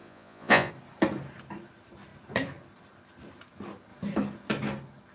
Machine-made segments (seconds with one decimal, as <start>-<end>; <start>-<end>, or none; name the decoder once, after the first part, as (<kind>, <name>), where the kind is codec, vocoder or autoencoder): 0.0-0.7 (vocoder, Vocos)